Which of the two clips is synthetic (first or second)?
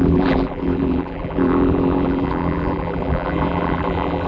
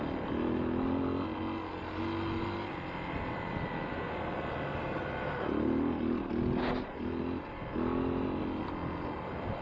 first